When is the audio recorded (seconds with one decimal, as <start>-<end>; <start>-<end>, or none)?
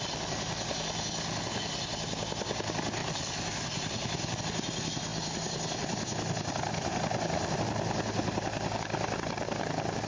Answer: 0.0-3.0; 4.4-10.1